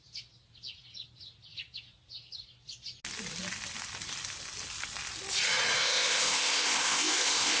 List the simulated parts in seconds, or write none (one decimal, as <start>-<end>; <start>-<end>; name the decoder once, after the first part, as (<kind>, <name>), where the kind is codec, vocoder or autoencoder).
5.8-7.6 (codec, ZipCodec)